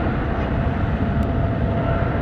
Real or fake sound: fake